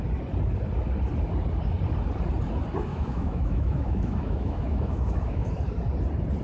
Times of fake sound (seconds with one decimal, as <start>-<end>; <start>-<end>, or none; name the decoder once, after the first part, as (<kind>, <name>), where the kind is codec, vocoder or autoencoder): 2.9-5.5 (autoencoder, DAC-VAE)